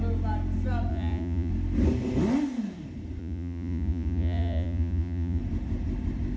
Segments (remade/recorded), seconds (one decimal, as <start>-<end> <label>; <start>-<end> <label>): 0.0-0.9 recorded; 0.9-1.5 remade; 1.5-3.2 recorded; 3.2-5.4 remade; 5.4-6.4 recorded